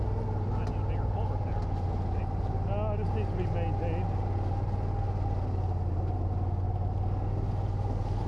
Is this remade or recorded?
recorded